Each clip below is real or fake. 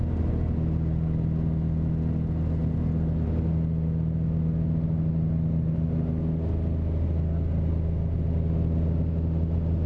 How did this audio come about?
real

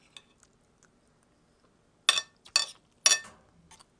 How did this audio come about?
real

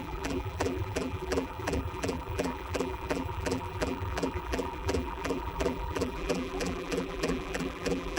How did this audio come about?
fake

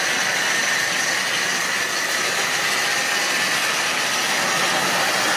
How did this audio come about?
real